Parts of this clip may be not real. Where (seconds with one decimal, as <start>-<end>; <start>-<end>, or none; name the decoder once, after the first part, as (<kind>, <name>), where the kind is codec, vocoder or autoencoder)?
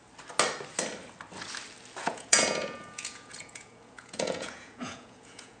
2.0-5.6 (vocoder, Vocos)